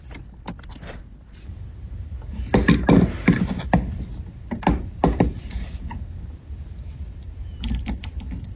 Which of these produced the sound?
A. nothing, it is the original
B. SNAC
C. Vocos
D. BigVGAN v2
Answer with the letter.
A